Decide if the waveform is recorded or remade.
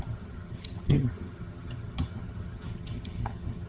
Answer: remade